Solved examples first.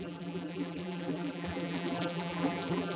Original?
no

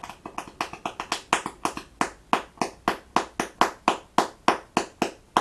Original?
yes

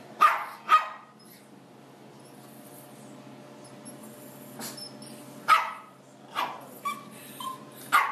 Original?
yes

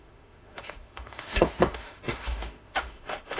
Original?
no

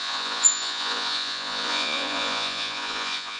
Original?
no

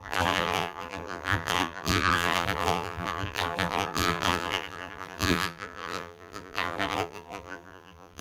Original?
no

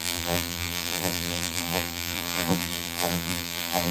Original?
no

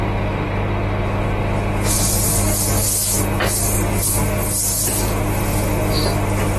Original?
yes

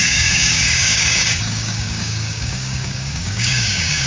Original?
no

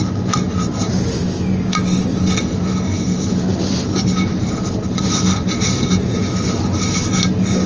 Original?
yes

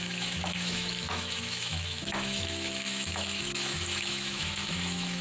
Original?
no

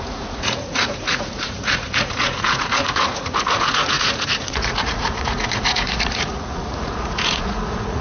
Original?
no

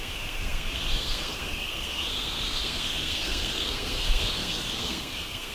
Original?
no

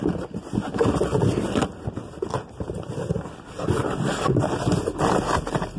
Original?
yes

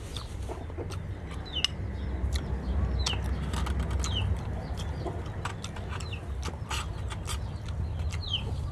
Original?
yes